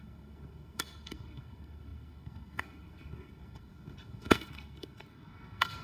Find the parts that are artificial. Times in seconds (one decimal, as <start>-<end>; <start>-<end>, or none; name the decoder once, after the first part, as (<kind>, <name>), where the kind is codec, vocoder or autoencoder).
0.0-5.8 (codec, SNAC)